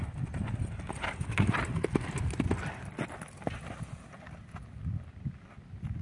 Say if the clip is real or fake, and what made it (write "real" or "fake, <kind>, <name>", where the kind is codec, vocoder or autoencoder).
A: real